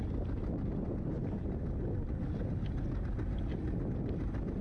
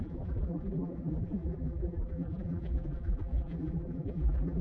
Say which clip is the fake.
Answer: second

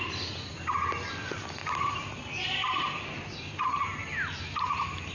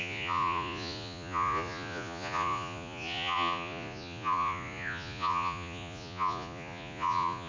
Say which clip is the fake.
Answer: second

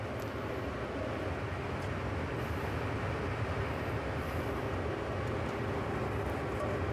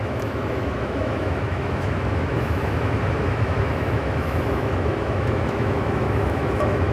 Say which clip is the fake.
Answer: second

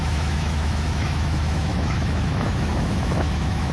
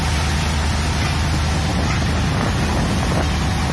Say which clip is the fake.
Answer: first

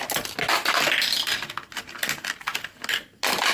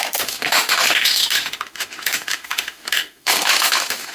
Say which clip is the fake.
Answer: second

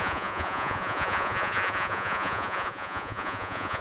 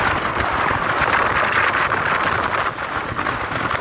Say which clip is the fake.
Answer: first